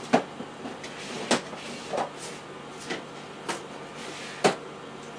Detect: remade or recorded recorded